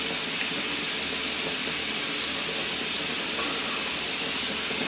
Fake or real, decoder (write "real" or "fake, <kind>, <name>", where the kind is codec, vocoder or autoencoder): real